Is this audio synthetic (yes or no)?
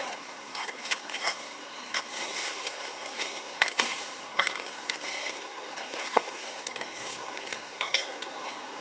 yes